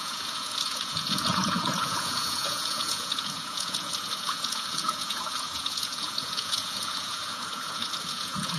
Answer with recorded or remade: remade